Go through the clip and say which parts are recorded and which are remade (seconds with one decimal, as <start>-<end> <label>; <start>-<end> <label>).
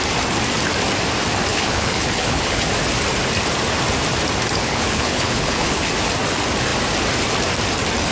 0.0-1.5 recorded; 1.5-2.7 remade; 2.7-4.6 recorded; 4.6-5.9 remade; 5.9-8.1 recorded